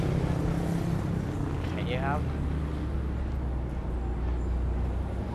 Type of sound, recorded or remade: recorded